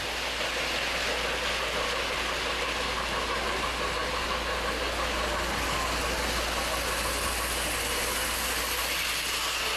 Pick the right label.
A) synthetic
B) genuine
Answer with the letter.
B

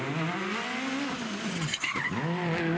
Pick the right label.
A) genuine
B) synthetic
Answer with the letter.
A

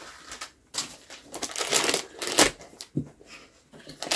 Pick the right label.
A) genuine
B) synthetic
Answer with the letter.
A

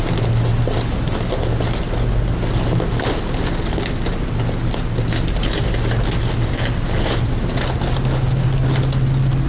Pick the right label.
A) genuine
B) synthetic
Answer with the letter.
A